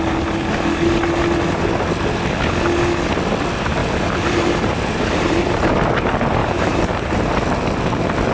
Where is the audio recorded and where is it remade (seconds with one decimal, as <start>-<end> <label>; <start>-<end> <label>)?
0.0-3.8 recorded; 3.8-5.6 remade; 5.6-6.4 recorded; 6.4-7.3 remade; 7.3-8.3 recorded